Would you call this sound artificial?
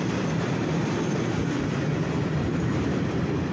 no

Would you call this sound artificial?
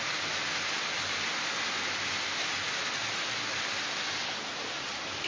no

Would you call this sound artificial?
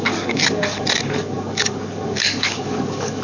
yes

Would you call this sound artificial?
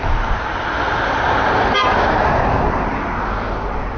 no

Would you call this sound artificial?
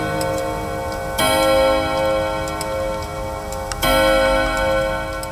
no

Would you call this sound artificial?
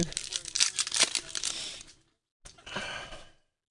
no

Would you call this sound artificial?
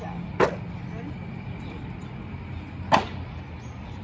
no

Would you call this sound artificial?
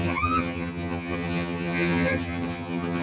yes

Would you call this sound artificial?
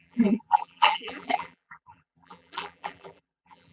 yes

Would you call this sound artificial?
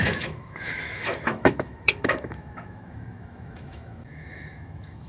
yes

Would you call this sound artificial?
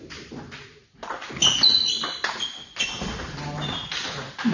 no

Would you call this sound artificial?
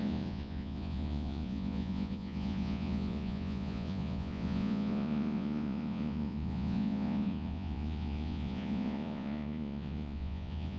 yes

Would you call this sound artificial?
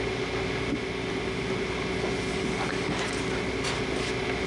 no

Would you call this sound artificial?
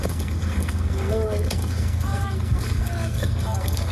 yes